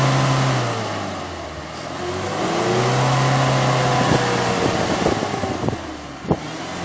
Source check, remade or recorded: recorded